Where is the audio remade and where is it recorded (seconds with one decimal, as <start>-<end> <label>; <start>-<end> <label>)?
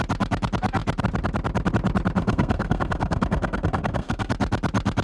0.0-2.2 recorded; 2.2-4.3 remade; 4.3-5.0 recorded